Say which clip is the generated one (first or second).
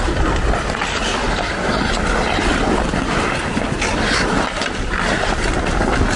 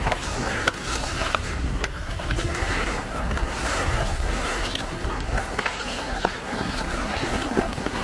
second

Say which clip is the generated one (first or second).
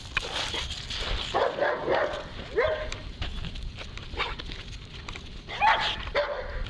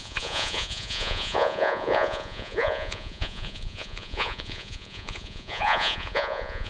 second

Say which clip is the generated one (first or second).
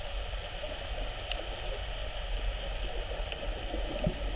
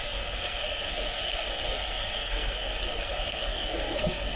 second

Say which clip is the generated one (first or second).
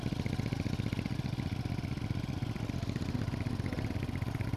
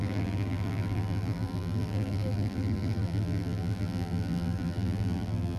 second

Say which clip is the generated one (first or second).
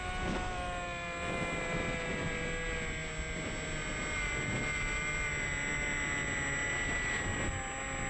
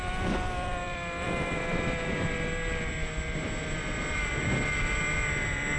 second